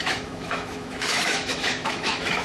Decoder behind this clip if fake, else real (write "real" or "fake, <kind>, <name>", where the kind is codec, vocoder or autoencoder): fake, autoencoder, DAC-VAE